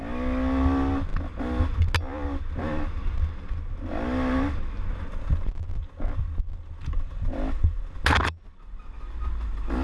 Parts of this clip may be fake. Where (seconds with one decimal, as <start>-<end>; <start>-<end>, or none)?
none